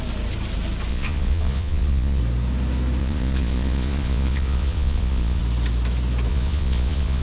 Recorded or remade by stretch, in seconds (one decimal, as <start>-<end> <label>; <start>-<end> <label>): 0.0-0.9 recorded; 0.9-2.2 remade; 2.2-3.0 recorded; 3.0-5.4 remade; 5.4-6.3 recorded; 6.3-7.2 remade